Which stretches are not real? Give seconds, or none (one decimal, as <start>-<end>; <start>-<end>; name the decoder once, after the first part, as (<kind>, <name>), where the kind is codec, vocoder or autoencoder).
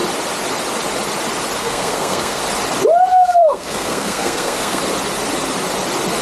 1.6-2.4 (codec, SNAC); 3.1-4.8